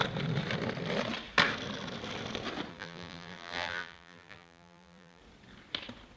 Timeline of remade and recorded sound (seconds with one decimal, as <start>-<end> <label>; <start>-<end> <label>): 0.0-2.7 recorded; 2.7-5.2 remade; 5.2-6.2 recorded